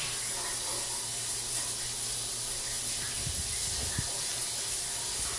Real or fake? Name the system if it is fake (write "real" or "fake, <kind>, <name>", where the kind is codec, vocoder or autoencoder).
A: real